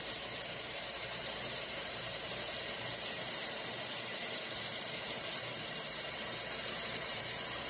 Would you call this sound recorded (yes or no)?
no